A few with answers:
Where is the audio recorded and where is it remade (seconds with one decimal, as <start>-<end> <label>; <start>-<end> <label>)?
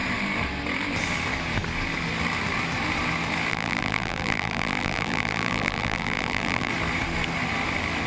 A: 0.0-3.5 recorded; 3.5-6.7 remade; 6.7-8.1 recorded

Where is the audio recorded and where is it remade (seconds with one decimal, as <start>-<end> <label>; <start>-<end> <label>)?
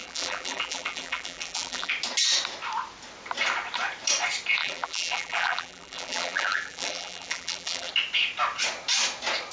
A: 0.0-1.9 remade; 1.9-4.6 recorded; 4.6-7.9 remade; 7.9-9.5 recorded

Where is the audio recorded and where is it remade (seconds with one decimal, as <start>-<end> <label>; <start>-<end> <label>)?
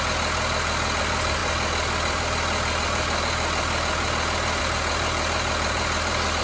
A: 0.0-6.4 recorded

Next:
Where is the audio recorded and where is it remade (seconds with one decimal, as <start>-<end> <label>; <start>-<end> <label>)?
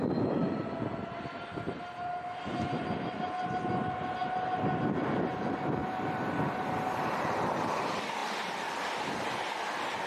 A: 0.0-10.1 recorded